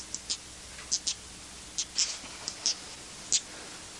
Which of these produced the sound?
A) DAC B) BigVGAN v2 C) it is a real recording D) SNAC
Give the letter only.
C